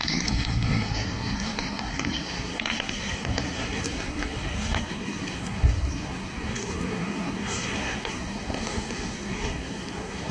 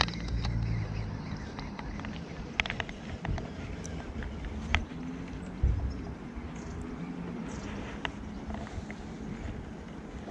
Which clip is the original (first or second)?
second